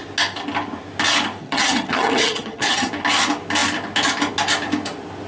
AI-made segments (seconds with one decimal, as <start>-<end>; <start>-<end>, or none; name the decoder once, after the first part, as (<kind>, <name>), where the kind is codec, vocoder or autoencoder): 1.4-2.9 (vocoder, HiFi-GAN)